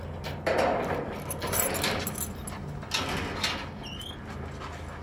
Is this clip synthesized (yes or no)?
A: no